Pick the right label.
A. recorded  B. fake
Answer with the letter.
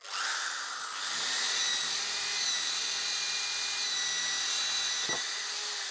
A